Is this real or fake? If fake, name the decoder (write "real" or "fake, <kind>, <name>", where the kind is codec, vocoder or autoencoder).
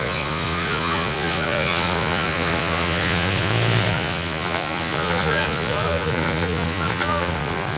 fake, vocoder, Vocos